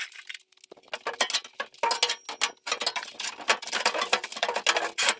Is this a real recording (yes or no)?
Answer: yes